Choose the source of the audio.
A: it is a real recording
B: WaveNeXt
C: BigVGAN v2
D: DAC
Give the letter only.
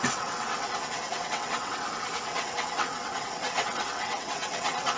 B